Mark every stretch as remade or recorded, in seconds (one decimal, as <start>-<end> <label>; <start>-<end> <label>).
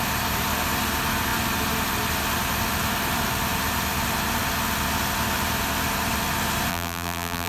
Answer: 0.0-6.7 recorded; 6.7-7.5 remade